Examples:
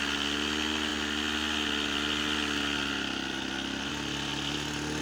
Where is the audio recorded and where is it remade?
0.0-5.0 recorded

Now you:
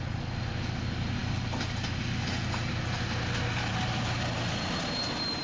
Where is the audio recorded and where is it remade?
0.0-5.4 recorded

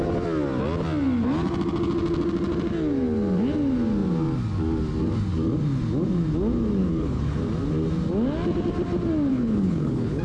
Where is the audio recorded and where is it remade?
0.0-6.8 recorded; 6.8-7.4 remade; 7.4-9.3 recorded; 9.3-10.2 remade